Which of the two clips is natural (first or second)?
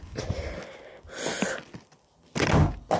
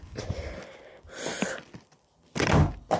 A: first